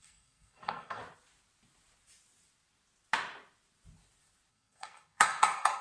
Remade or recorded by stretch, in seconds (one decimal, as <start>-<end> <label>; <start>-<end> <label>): 0.0-1.0 remade; 1.0-4.5 recorded; 4.5-5.8 remade

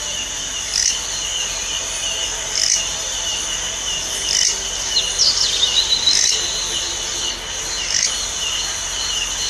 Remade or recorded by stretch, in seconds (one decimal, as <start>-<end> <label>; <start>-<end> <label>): 0.0-9.5 recorded